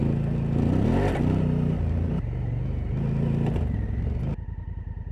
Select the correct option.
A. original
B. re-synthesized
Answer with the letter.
A